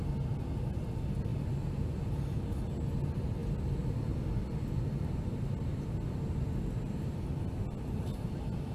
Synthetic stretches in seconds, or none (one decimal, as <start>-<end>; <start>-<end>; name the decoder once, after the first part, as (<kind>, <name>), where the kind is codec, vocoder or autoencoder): none